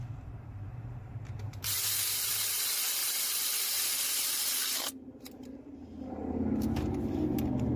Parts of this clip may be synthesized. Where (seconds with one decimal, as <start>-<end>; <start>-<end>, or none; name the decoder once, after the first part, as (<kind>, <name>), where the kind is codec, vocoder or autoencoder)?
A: 0.0-7.8 (vocoder, BigVGAN v2)